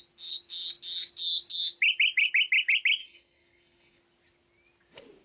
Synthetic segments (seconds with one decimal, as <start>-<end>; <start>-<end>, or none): 3.0-4.0